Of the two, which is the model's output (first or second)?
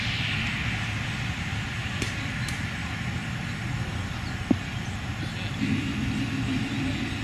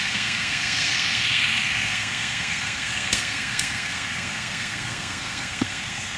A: second